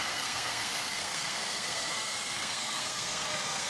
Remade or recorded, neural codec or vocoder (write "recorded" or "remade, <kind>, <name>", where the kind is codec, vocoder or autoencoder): remade, codec, SNAC